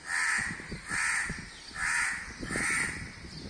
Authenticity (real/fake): real